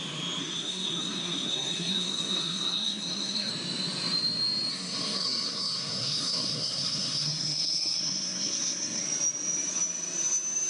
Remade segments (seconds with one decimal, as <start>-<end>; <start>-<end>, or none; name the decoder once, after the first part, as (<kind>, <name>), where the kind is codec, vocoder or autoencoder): 0.4-3.5 (codec, SNAC); 4.7-9.0